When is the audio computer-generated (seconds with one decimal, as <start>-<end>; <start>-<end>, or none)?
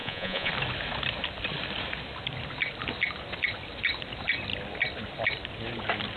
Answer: 0.0-0.5